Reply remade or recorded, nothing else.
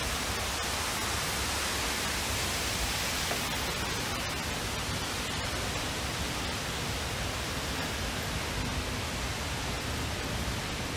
recorded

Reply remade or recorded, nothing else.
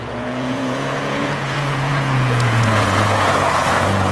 remade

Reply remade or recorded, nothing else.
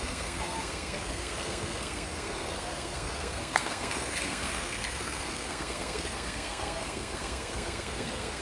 remade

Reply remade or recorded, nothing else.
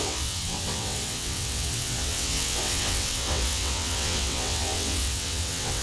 remade